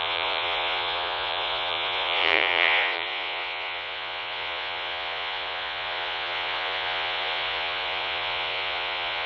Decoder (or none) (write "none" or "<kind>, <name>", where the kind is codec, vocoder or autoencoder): vocoder, Vocos